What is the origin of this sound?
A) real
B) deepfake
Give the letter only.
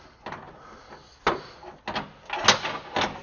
A